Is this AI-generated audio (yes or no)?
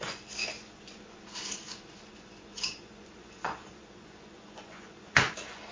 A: yes